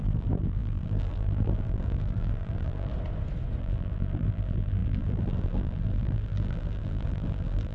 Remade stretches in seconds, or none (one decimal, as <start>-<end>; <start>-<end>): 0.0-2.9; 3.6-7.7